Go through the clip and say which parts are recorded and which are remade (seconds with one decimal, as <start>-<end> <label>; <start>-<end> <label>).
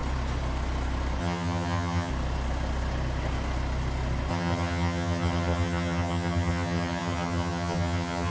0.0-1.2 recorded; 1.2-2.1 remade; 2.1-4.3 recorded; 4.3-8.3 remade